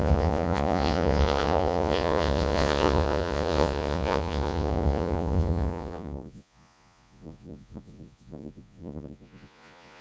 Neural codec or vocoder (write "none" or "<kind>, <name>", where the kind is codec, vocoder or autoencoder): vocoder, Vocos